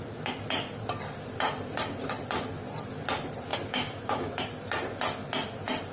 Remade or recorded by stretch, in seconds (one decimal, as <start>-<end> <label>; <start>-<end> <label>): 0.0-3.5 recorded; 3.5-4.4 remade; 4.4-5.9 recorded